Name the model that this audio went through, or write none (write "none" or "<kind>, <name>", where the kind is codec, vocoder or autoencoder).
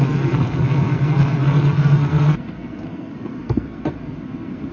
codec, SNAC